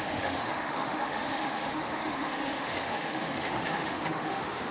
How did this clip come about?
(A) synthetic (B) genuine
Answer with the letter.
A